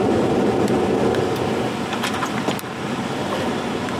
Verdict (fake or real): real